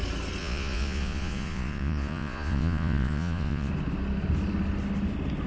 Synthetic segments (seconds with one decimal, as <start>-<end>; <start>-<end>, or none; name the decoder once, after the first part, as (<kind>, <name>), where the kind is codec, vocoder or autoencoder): 0.4-3.7 (vocoder, Vocos)